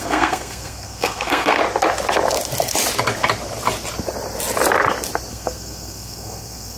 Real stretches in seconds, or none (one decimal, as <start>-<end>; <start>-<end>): 1.6-5.3